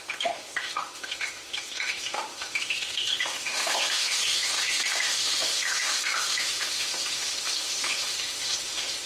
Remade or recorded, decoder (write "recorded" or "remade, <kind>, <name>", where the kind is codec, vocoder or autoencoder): remade, autoencoder, DAC-VAE